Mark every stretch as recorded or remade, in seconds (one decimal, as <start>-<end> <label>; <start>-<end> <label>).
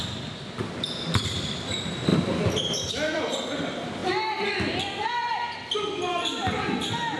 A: 0.0-7.2 recorded